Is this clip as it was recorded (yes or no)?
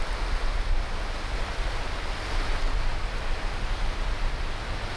yes